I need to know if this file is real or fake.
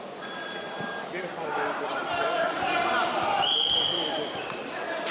fake